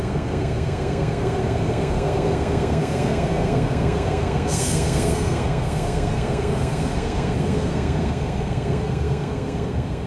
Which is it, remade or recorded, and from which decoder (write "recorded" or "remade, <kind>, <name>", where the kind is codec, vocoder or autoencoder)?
remade, codec, SNAC